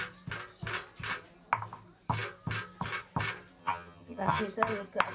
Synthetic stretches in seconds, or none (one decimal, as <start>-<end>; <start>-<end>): 3.6-4.4

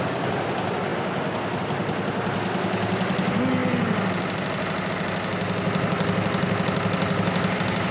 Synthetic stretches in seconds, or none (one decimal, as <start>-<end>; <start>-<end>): none

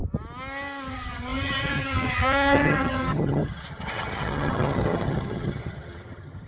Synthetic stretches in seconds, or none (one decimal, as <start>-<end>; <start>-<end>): 0.9-6.5

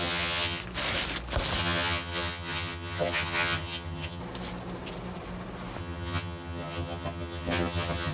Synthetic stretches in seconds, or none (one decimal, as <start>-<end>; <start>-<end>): 0.0-0.6; 1.6-4.2; 5.8-8.1

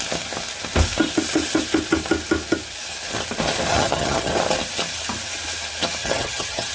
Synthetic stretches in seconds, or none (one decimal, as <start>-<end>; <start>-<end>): 3.7-4.3; 6.0-6.7

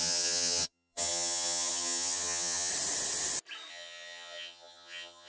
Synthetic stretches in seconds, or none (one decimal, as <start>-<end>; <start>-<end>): 0.0-2.7; 3.7-5.3

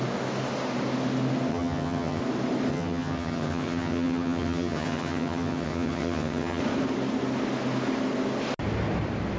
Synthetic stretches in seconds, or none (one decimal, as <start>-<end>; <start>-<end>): 1.5-2.2; 2.7-6.6

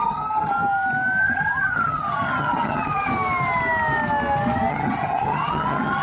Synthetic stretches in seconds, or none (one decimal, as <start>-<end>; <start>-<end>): 0.0-0.6; 1.2-3.1; 4.7-6.0